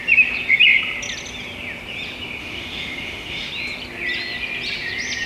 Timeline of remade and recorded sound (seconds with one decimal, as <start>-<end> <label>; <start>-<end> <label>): 0.0-2.4 recorded; 2.4-3.5 remade; 3.5-5.3 recorded